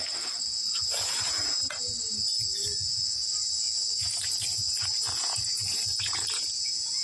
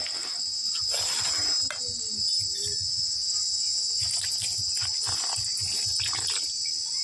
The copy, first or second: first